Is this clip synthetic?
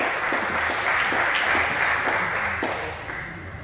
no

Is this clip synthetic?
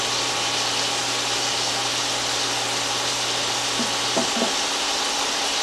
no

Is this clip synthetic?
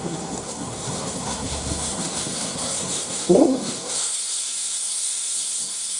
yes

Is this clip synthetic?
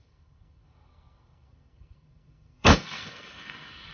yes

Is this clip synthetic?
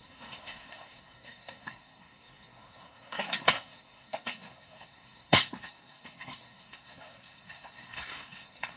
yes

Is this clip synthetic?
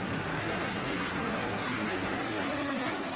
yes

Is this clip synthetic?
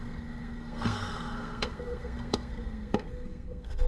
yes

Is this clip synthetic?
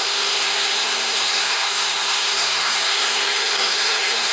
yes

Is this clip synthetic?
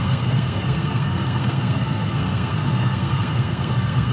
yes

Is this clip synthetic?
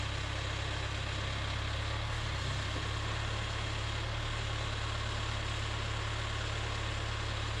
no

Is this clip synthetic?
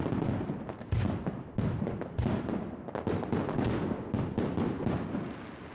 no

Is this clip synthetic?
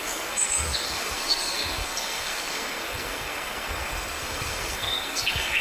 yes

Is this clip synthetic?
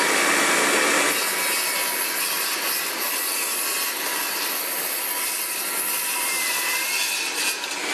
no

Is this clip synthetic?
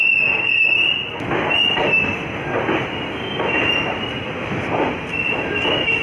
no